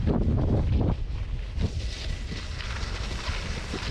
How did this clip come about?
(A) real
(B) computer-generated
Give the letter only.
A